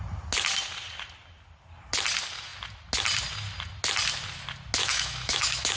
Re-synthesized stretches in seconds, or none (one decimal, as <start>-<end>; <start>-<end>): 4.8-5.8